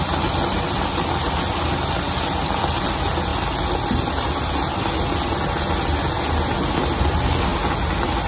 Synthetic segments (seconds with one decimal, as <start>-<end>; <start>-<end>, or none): none